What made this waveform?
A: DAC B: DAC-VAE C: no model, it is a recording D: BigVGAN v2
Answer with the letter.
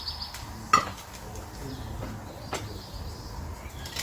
C